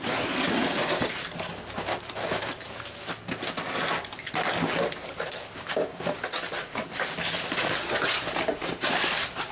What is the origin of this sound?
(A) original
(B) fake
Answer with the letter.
A